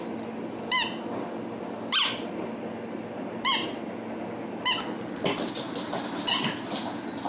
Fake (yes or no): no